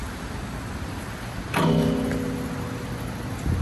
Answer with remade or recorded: recorded